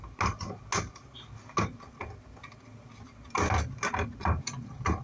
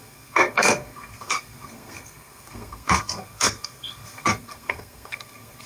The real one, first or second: first